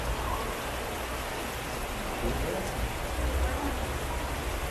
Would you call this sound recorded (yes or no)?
yes